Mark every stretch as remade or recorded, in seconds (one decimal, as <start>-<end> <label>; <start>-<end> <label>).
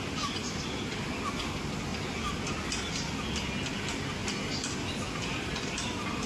0.0-6.3 recorded